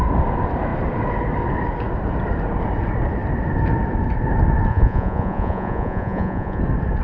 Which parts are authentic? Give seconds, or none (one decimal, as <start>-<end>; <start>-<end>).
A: 0.0-4.7; 6.6-7.0